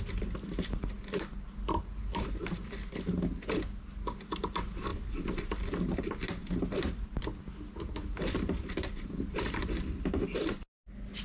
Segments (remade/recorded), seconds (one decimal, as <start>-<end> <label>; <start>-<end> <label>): 0.0-11.2 recorded